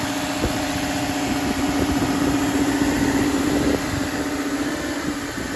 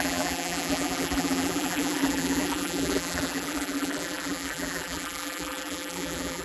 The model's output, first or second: second